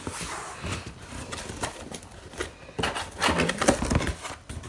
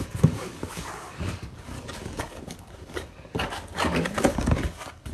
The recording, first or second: first